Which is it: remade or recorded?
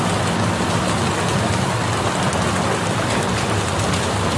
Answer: recorded